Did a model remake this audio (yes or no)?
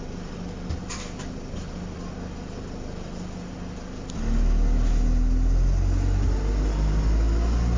no